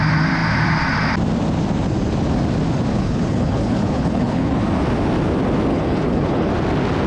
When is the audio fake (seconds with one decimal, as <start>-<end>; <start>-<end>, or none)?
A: 2.9-4.5; 5.7-6.5